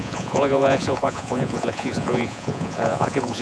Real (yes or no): no